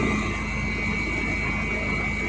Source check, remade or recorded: recorded